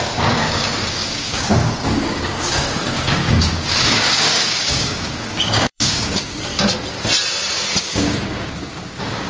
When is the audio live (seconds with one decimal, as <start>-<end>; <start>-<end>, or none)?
6.5-7.8